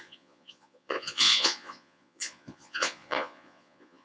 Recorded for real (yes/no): no